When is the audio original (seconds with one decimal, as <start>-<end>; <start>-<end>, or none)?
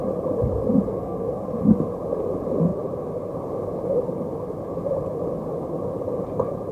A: 0.0-0.9; 1.5-6.7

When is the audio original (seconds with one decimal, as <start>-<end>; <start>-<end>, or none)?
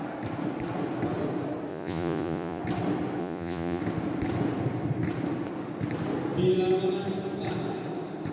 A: 0.0-1.7; 2.6-3.2; 3.8-8.3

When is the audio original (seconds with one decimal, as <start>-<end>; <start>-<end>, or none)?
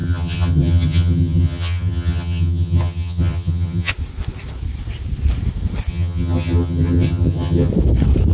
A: 3.9-5.9; 7.7-8.3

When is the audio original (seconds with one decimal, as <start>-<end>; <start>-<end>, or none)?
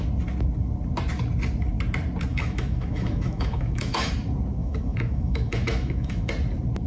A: 0.0-2.3; 4.1-4.6; 6.3-6.9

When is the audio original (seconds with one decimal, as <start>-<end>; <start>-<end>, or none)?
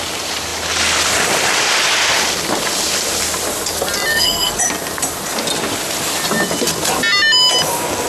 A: 0.0-4.1; 4.6-8.1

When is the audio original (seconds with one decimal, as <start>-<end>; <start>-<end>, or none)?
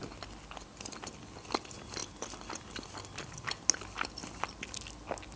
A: 0.0-5.4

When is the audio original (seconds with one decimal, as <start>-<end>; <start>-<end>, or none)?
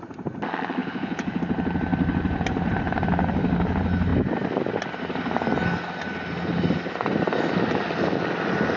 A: 0.0-0.8; 1.4-8.8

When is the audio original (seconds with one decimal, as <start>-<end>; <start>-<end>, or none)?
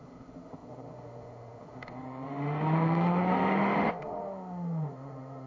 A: none